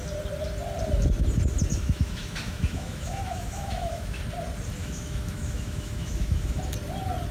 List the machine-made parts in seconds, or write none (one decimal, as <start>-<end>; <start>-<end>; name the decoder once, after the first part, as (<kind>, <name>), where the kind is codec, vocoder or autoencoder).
1.7-4.2 (autoencoder, DAC-VAE); 4.8-6.6